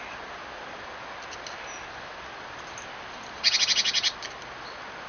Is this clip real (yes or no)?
yes